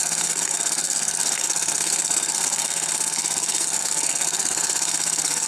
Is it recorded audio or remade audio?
remade